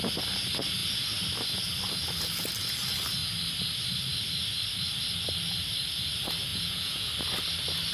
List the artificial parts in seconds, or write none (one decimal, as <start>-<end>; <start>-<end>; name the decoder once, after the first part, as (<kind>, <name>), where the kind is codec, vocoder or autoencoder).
6.5-7.1 (vocoder, Vocos)